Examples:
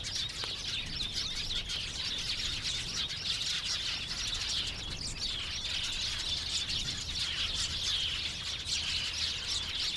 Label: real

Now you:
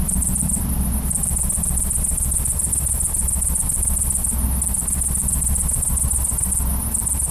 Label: real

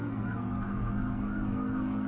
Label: fake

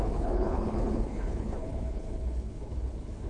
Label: fake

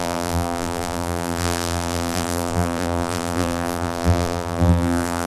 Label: fake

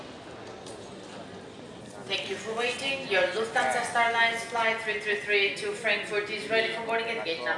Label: real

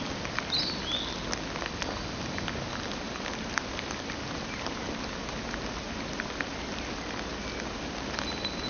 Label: real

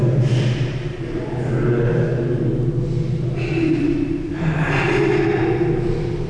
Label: real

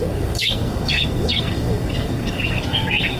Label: fake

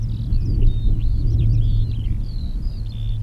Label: fake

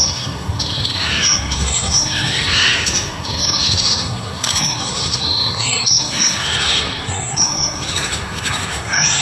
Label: fake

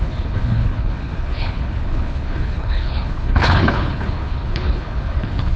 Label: fake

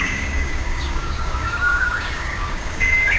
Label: fake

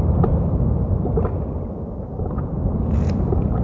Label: real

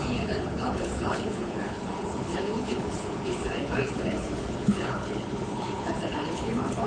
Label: fake